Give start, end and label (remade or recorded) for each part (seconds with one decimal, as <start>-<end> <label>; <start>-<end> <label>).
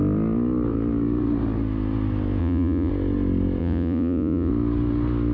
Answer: 0.0-2.4 recorded; 2.4-2.9 remade; 2.9-3.6 recorded; 3.6-4.5 remade; 4.5-5.3 recorded